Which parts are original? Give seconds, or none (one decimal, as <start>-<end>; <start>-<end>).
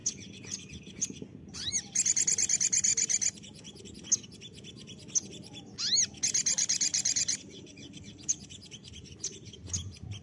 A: 0.0-6.5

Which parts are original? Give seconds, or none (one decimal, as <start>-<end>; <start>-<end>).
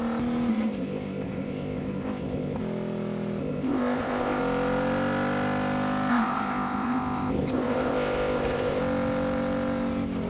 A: 0.0-0.5; 2.6-3.4; 4.4-6.1; 8.8-10.3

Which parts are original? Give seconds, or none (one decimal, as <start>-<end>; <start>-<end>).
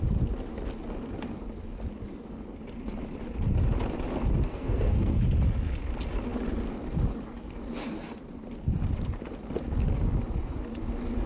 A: 0.0-4.5; 5.2-11.3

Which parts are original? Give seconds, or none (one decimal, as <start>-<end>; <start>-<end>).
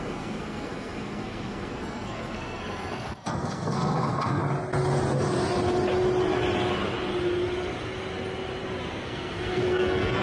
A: 4.4-8.9